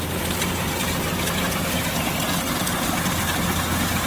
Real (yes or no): yes